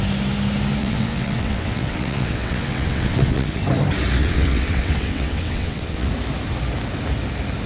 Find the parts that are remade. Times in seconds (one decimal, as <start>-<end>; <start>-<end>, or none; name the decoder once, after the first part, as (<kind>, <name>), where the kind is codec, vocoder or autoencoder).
0.8-3.6 (vocoder, WaveNeXt); 4.2-6.1